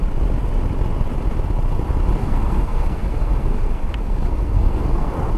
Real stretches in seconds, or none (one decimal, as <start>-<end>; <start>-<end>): 0.0-2.2